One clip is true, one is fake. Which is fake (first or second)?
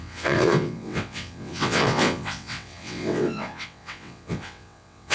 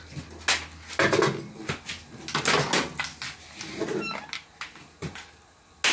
first